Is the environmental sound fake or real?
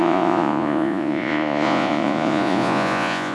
fake